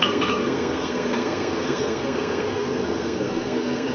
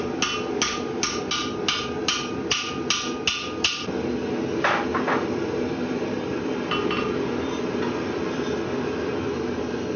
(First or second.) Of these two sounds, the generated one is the first